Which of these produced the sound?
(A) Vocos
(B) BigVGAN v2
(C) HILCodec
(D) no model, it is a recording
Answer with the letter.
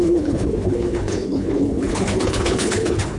C